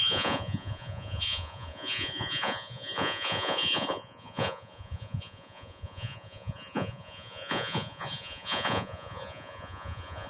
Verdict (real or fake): fake